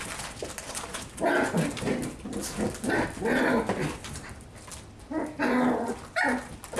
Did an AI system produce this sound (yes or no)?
no